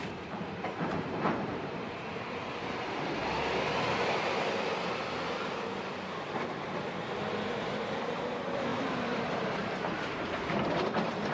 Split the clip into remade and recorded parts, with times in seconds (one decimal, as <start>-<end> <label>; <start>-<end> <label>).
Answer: 0.0-3.2 remade; 3.2-7.4 recorded; 7.4-11.3 remade